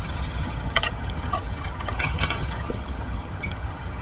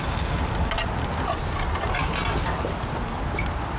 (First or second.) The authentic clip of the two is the second